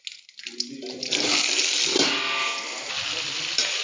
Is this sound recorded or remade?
recorded